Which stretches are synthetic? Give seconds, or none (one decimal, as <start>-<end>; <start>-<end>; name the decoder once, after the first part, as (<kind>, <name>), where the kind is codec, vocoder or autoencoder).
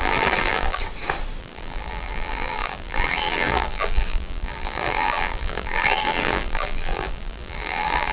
0.0-0.8 (vocoder, BigVGAN v2); 1.4-8.1